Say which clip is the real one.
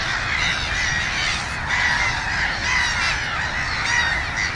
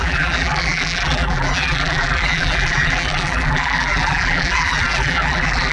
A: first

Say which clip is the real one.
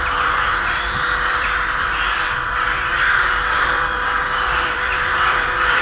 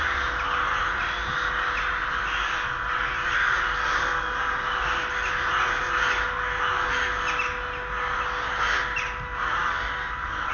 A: second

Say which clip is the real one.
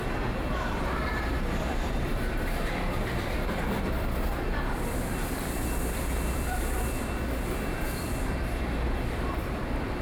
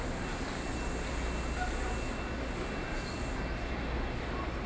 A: second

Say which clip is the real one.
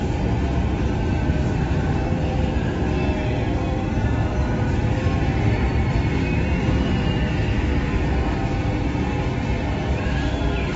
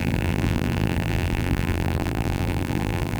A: first